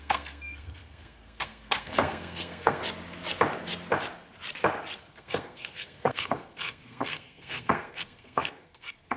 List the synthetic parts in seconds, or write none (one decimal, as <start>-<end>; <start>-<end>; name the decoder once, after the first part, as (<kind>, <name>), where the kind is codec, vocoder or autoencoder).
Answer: 0.0-2.8 (codec, SNAC); 5.0-9.2